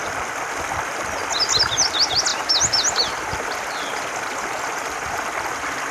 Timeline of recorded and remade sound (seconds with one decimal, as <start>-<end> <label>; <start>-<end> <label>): 0.0-5.9 recorded